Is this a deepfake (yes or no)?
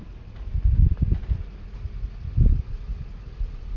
no